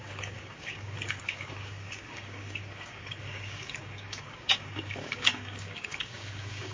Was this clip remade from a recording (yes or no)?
yes